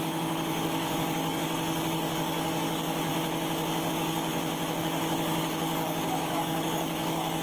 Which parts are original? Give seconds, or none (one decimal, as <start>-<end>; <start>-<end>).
3.1-3.9; 4.3-4.8